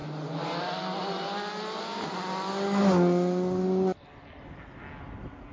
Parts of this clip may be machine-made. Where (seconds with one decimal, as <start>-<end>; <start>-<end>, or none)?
none